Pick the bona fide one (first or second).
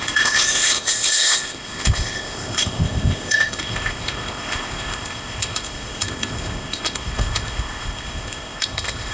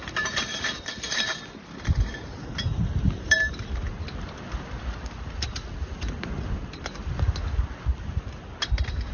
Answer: second